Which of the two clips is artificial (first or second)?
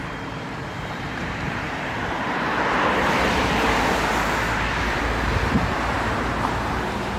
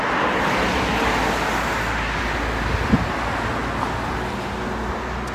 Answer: first